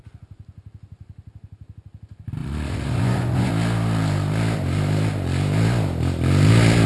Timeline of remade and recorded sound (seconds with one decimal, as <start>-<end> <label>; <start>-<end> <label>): 0.0-2.4 recorded; 2.4-3.5 remade; 3.5-6.9 recorded